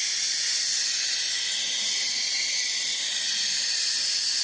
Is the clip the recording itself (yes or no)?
yes